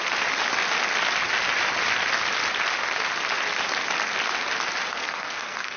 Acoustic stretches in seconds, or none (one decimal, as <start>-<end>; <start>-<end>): 0.0-4.9